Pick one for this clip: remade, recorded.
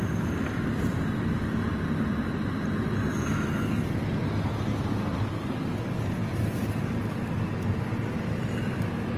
recorded